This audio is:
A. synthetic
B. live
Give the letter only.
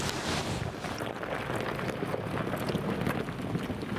B